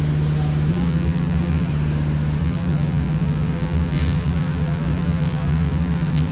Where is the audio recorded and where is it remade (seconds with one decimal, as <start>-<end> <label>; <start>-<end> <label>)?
0.0-0.7 recorded; 0.7-1.7 remade; 1.7-2.4 recorded; 2.4-6.3 remade